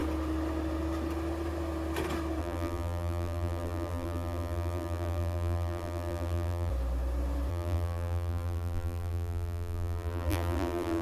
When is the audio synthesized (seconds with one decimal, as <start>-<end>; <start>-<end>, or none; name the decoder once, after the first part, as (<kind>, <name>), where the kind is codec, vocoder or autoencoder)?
2.4-6.7 (vocoder, BigVGAN v2); 7.5-11.0